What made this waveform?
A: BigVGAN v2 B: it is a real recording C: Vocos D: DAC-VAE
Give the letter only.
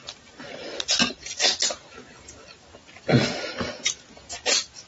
B